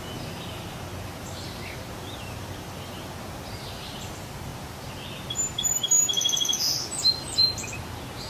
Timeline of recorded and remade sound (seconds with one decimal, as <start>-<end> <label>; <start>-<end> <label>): 0.0-8.3 recorded

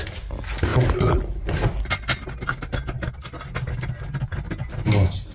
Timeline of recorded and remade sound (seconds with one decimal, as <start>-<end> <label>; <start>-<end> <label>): 0.0-5.3 recorded